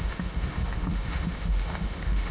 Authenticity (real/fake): fake